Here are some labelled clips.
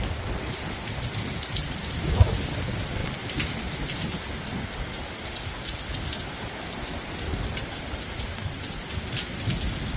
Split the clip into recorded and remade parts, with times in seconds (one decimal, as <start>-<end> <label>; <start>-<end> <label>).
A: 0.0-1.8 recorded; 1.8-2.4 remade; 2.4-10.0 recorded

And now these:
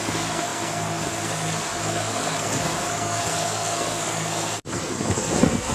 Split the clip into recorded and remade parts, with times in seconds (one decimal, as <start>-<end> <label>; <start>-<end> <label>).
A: 0.0-5.7 remade

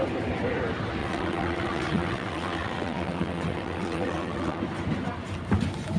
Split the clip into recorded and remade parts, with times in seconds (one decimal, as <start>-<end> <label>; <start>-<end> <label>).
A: 0.0-1.0 recorded; 1.0-4.6 remade; 4.6-6.0 recorded

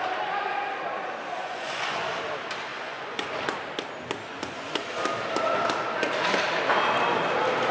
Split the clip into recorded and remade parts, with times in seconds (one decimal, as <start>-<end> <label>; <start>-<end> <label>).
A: 0.0-1.4 recorded; 1.4-2.1 remade; 2.1-2.7 recorded; 2.7-3.4 remade; 3.4-4.3 recorded; 4.3-4.9 remade; 4.9-7.7 recorded